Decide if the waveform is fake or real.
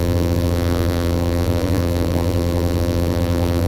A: fake